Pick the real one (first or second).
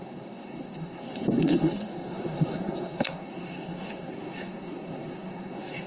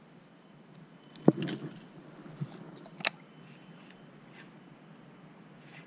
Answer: second